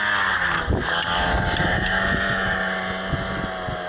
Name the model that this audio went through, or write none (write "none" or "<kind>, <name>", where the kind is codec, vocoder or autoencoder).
none